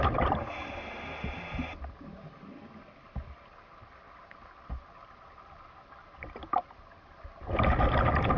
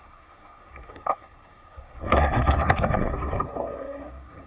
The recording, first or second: first